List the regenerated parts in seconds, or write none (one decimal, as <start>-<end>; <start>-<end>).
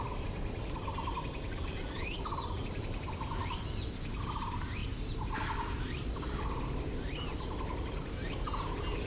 none